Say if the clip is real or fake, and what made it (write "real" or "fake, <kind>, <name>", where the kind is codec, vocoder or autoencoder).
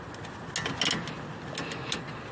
real